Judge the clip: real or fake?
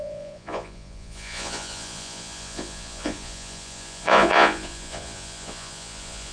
fake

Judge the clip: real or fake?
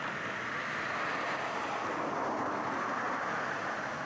real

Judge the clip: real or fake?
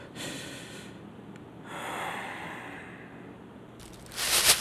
real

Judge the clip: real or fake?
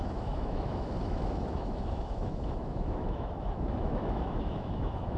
fake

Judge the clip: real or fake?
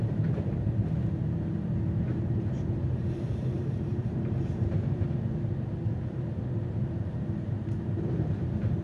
fake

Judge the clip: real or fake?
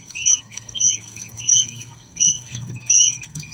fake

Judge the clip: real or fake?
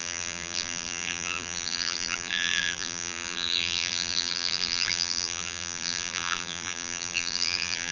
fake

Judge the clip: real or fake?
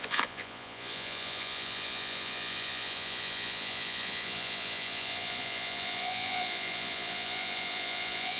fake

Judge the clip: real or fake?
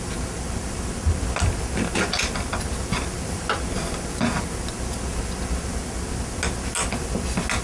real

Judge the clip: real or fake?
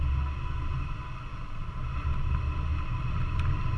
real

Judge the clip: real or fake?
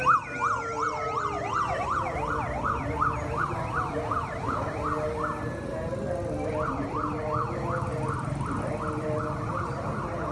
real